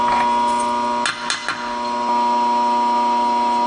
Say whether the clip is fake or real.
real